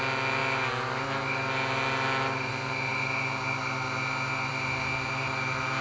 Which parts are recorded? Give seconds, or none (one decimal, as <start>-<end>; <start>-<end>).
0.0-5.8